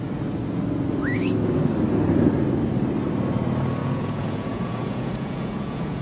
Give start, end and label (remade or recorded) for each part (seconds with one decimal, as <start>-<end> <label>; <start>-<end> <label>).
0.0-3.8 recorded; 3.8-6.0 remade